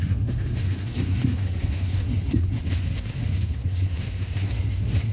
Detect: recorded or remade remade